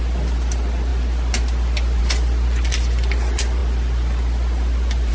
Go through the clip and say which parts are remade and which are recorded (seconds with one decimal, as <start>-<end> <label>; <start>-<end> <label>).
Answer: 0.0-5.1 recorded

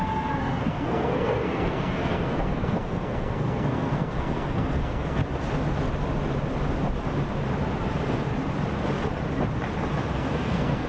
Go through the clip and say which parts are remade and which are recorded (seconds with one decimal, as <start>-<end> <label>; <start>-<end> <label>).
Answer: 0.0-5.2 remade; 5.2-10.1 recorded; 10.1-10.9 remade

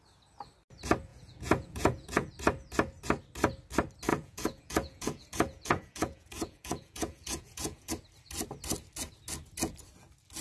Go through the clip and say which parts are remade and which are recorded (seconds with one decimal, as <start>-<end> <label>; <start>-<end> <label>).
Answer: 0.0-1.1 recorded; 1.1-2.3 remade; 2.3-4.1 recorded; 4.1-7.9 remade; 7.9-10.4 recorded

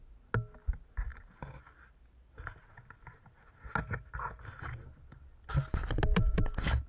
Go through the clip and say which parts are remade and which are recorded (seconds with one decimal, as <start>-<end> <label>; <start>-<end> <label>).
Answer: 0.0-6.9 recorded

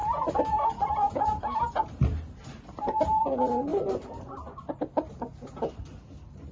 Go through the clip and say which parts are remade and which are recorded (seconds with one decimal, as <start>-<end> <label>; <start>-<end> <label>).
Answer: 0.0-6.5 recorded

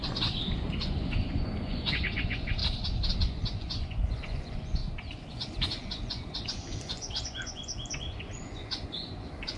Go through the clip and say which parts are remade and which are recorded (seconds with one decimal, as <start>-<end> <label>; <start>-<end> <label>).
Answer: 0.0-2.6 remade; 2.6-3.2 recorded; 3.2-4.8 remade; 4.8-5.3 recorded; 5.3-9.6 remade

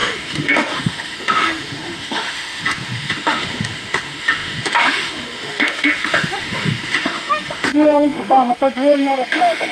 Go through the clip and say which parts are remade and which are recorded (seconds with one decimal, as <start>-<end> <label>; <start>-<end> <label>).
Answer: 0.0-9.7 remade

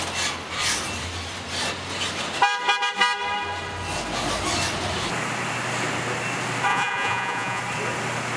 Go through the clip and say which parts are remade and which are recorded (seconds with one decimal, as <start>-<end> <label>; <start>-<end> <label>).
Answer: 0.0-6.7 recorded; 6.7-7.6 remade; 7.6-8.4 recorded